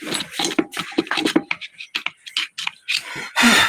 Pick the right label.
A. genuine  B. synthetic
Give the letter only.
A